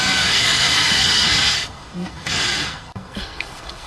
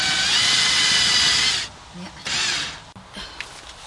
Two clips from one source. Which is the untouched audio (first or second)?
second